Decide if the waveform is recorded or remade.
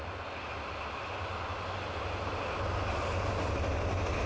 recorded